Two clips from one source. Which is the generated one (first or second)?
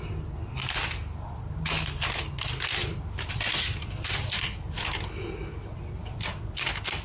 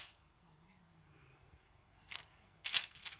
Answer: second